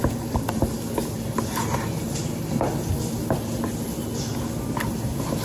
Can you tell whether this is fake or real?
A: real